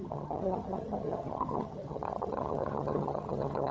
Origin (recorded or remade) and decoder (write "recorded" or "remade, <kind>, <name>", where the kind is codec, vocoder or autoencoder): remade, vocoder, HiFi-GAN